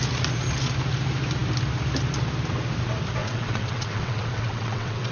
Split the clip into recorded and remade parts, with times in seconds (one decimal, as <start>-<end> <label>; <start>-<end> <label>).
0.0-3.2 recorded; 3.2-5.1 remade